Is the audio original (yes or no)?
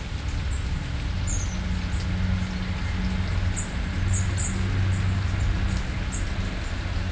yes